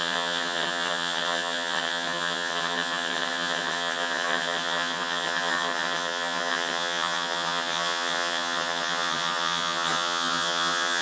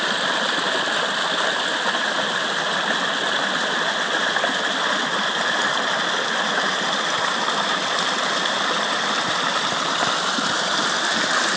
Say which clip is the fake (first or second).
first